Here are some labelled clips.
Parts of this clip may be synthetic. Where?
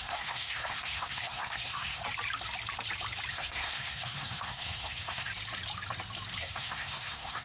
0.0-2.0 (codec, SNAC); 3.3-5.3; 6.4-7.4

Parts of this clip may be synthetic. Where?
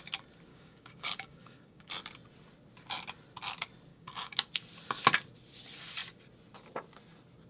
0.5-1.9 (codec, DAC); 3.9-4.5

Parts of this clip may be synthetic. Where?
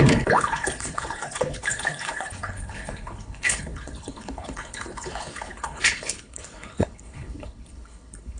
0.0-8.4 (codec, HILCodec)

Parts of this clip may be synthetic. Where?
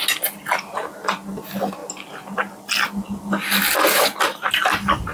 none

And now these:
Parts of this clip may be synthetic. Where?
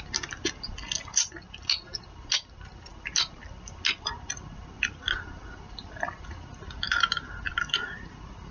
none